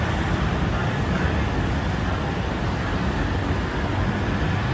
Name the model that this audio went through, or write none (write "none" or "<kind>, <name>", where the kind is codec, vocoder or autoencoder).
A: none